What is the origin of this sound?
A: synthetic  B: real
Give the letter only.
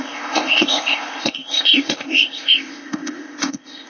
A